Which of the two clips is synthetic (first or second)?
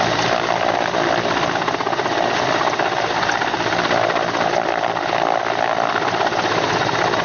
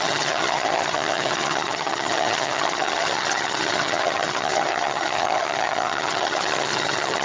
second